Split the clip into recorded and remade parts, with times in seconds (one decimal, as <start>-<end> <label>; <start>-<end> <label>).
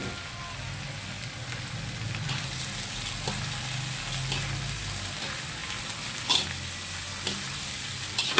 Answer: 0.0-8.4 recorded